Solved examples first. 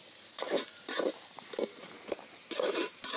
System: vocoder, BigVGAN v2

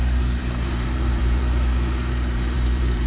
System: vocoder, BigVGAN v2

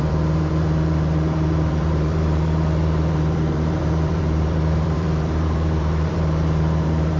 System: vocoder, BigVGAN v2